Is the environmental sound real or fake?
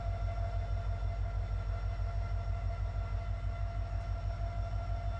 real